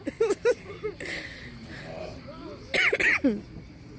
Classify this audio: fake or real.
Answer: real